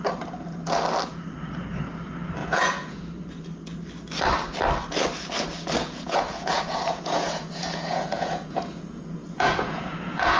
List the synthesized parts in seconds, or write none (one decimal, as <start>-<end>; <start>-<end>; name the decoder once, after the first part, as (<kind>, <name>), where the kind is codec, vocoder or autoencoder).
2.4-3.0 (vocoder, Vocos); 5.8-10.4